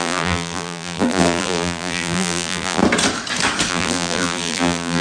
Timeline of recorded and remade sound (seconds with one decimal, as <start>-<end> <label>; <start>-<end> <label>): 0.0-2.8 remade; 2.8-3.7 recorded; 3.7-5.0 remade